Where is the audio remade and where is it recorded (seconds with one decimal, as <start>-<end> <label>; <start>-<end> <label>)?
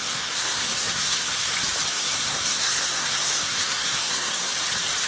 0.0-1.5 remade; 1.5-1.9 recorded; 1.9-4.5 remade; 4.5-5.1 recorded